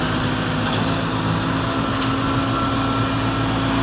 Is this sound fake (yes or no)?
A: no